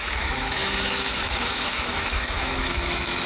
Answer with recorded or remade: remade